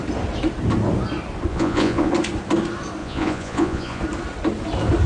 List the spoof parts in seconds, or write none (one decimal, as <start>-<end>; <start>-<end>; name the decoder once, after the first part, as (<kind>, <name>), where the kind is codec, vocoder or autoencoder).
1.5-2.1 (vocoder, Vocos); 3.0-4.0